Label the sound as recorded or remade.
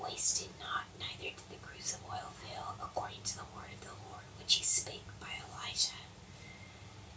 recorded